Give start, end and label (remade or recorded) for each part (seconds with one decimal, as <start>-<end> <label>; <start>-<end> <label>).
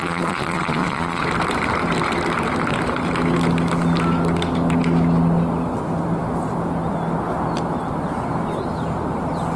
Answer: 0.0-1.2 remade; 1.2-9.6 recorded